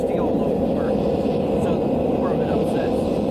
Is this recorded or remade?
recorded